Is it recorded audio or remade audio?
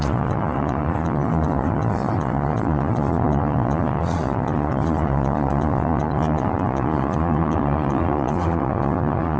remade